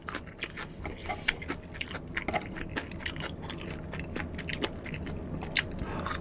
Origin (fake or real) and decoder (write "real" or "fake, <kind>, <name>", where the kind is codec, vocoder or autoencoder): real